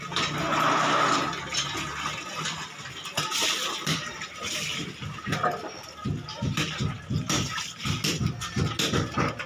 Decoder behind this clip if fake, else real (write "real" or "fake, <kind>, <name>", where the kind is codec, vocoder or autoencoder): real